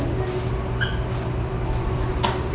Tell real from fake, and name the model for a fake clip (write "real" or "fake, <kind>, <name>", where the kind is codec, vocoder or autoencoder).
real